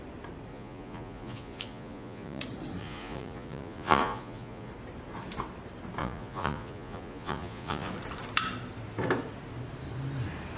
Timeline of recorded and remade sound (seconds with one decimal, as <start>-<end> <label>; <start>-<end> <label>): 0.0-0.5 recorded; 0.5-2.4 remade; 2.4-2.8 recorded; 2.8-4.7 remade; 4.7-6.0 recorded; 6.0-7.9 remade; 7.9-10.6 recorded